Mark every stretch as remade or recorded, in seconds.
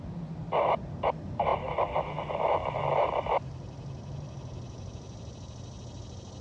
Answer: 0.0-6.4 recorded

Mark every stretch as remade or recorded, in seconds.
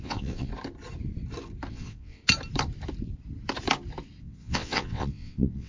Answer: 0.0-0.5 remade; 0.5-1.7 recorded; 1.7-2.2 remade; 2.2-4.2 recorded; 4.2-5.7 remade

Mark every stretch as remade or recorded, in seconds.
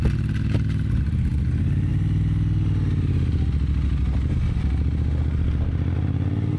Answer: 0.0-6.6 recorded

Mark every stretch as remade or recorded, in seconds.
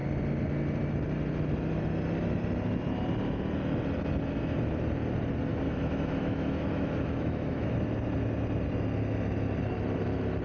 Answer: 0.0-5.5 recorded; 5.5-7.7 remade; 7.7-10.4 recorded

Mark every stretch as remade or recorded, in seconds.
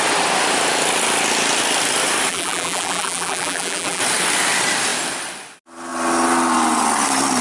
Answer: 0.0-2.3 recorded; 2.3-4.0 remade; 4.0-7.4 recorded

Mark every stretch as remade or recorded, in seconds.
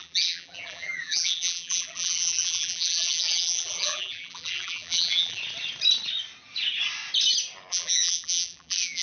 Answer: 0.0-5.4 remade; 5.4-7.7 recorded; 7.7-9.0 remade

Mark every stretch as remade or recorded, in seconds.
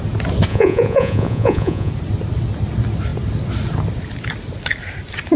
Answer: 0.0-0.5 recorded; 0.5-1.9 remade; 1.9-5.4 recorded